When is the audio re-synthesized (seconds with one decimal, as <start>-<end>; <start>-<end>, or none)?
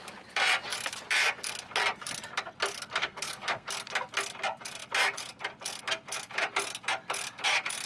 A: 3.0-3.7